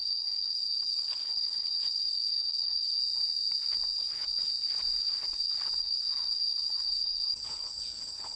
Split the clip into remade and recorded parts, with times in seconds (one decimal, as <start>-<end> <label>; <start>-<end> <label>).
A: 0.0-3.0 remade; 3.0-4.0 recorded; 4.0-4.5 remade; 4.5-5.0 recorded; 5.0-8.4 remade